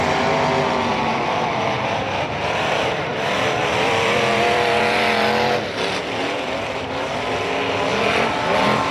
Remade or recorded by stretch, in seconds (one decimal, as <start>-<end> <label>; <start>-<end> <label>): 0.0-0.9 recorded; 0.9-4.8 remade; 4.8-7.9 recorded; 7.9-8.9 remade